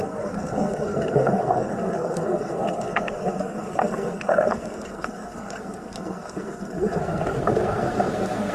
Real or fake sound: fake